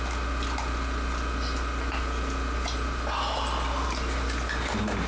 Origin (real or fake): real